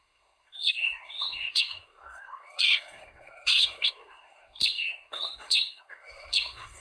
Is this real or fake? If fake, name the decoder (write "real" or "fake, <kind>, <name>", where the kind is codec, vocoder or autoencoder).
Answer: fake, codec, SNAC